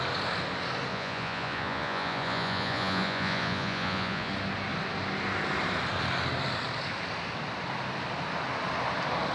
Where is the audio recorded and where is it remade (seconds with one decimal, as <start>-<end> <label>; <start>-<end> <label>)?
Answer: 0.0-0.9 recorded; 0.9-4.3 remade; 4.3-9.3 recorded